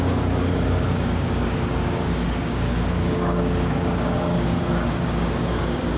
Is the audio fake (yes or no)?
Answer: yes